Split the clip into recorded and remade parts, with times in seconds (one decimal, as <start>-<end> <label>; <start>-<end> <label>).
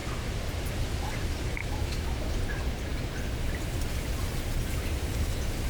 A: 0.0-1.6 recorded; 1.6-2.3 remade; 2.3-5.7 recorded